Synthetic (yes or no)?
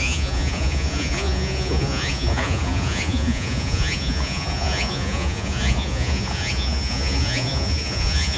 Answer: yes